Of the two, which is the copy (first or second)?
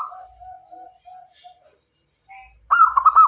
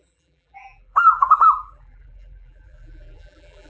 second